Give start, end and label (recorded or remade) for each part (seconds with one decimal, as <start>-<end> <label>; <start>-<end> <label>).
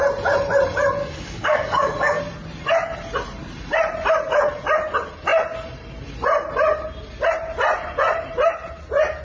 0.0-1.0 recorded; 1.0-2.2 remade; 2.2-9.2 recorded